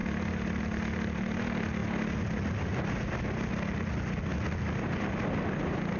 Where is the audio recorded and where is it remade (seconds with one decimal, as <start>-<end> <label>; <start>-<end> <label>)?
0.0-6.0 recorded